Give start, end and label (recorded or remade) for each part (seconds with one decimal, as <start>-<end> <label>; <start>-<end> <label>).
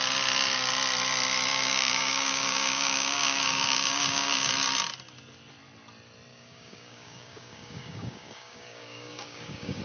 0.0-1.5 recorded; 1.5-4.5 remade; 4.5-6.3 recorded; 6.3-9.8 remade